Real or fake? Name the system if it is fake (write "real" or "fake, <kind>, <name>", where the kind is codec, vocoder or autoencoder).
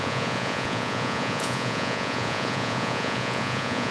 fake, vocoder, Vocos